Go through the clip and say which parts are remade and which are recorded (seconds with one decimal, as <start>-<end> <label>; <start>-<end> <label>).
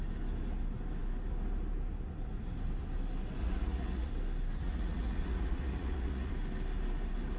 0.0-3.4 recorded; 3.4-4.1 remade; 4.1-4.6 recorded; 4.6-6.3 remade; 6.3-7.4 recorded